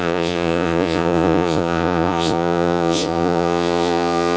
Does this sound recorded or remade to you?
remade